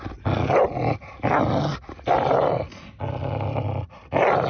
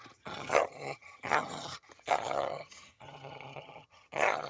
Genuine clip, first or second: first